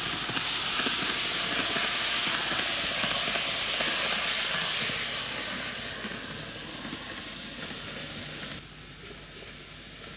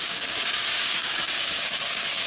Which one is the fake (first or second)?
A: second